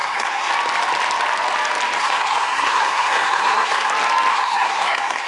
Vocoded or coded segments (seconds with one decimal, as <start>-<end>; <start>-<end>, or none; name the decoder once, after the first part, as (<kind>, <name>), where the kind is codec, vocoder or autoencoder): 0.0-0.5 (codec, SNAC); 2.0-3.9; 4.3-5.3